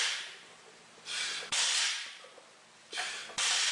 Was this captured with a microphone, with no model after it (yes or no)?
yes